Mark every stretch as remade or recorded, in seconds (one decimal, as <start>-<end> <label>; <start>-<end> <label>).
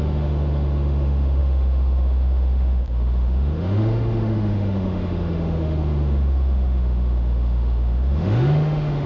0.0-9.1 remade